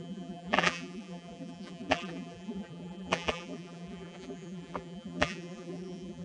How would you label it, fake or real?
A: fake